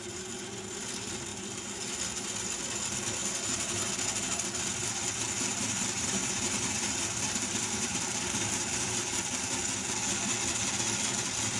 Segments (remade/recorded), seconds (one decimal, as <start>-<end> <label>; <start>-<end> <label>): 0.0-1.3 recorded; 1.3-1.8 remade; 1.8-3.2 recorded; 3.2-3.8 remade; 3.8-5.5 recorded; 5.5-9.6 remade; 9.6-11.6 recorded